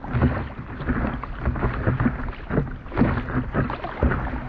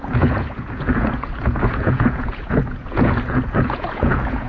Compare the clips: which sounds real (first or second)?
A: first